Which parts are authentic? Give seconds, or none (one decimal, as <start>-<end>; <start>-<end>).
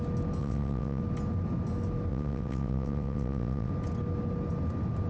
0.0-0.4; 1.0-2.1; 3.7-5.1